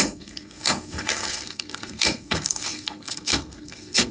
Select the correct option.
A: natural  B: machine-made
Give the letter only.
B